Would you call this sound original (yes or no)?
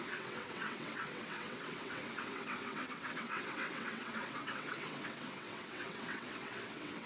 no